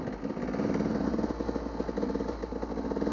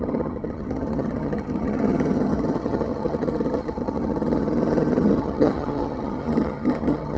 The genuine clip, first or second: first